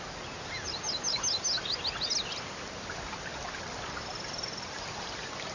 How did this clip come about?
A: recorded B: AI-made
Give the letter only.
A